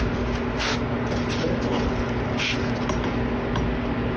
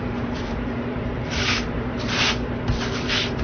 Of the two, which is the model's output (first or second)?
second